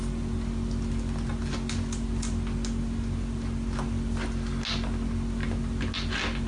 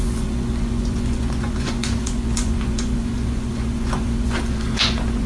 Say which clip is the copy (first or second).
second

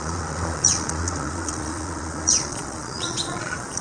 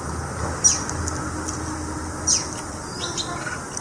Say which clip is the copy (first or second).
first